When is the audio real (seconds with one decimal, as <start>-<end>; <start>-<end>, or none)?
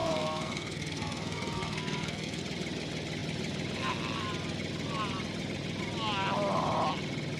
2.4-7.4